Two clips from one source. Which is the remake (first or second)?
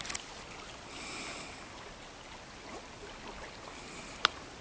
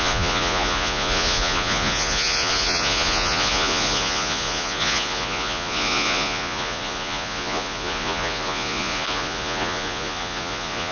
second